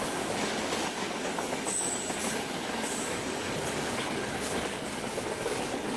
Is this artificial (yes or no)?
yes